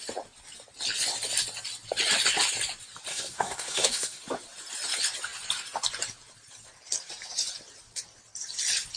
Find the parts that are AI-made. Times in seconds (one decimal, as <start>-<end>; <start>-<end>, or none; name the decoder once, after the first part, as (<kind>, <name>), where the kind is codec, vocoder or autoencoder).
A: 3.1-4.2 (codec, SNAC)